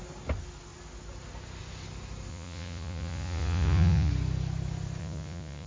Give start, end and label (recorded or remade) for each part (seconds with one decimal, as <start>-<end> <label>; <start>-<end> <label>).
0.0-2.3 recorded; 2.3-4.1 remade; 4.1-5.0 recorded; 5.0-5.7 remade